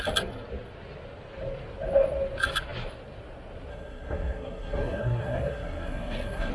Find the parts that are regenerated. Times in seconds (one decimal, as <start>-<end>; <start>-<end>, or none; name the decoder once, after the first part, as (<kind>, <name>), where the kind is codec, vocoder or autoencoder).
3.7-6.5 (codec, SNAC)